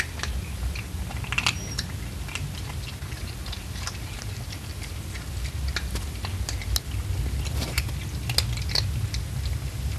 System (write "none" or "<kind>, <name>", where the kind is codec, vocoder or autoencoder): none